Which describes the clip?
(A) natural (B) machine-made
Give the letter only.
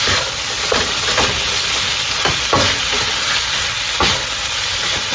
A